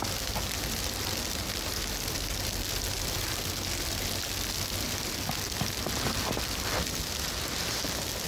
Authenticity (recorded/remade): recorded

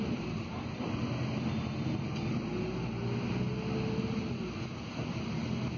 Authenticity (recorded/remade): recorded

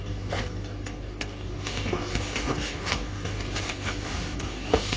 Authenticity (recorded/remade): remade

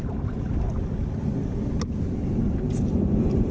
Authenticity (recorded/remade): recorded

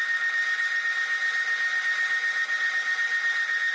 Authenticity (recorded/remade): recorded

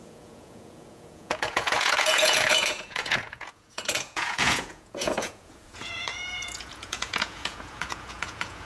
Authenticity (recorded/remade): remade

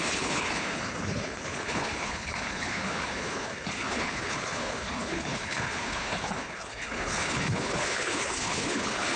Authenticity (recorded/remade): remade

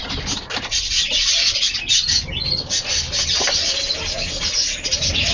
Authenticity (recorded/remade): recorded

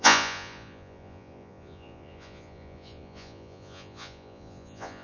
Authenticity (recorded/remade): remade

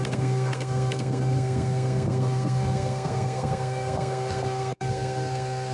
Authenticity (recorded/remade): remade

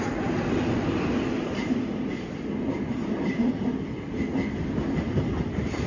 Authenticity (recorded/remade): recorded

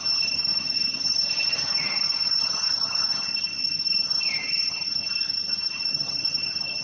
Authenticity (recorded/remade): remade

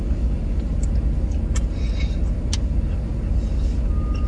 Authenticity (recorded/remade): recorded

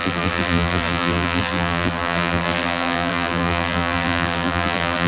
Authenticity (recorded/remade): remade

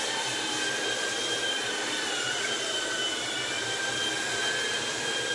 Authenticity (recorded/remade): remade